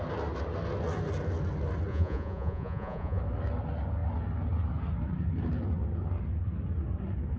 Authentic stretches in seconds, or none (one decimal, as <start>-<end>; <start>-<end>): 0.0-1.9; 3.2-7.4